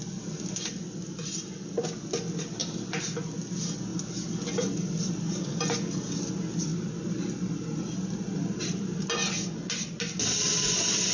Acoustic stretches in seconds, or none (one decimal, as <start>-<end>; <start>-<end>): 0.0-11.1